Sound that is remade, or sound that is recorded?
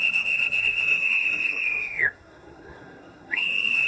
remade